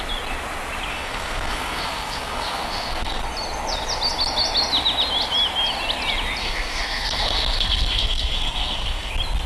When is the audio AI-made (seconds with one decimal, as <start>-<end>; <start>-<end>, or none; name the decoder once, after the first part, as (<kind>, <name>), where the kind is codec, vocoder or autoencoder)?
0.9-3.2 (codec, SNAC); 6.4-9.1